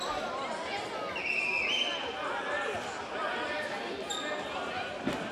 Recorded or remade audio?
recorded